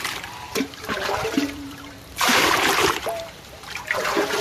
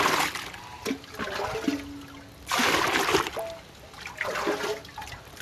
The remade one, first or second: first